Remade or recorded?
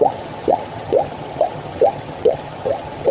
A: remade